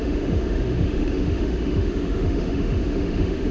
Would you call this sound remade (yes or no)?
yes